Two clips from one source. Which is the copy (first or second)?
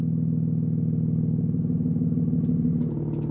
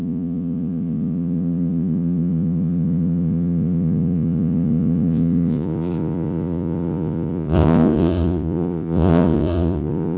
second